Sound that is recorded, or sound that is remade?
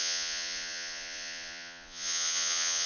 remade